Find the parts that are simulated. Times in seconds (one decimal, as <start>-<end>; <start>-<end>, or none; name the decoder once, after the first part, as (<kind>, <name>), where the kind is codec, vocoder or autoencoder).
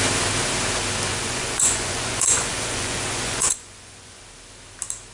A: 1.1-4.2 (vocoder, Vocos)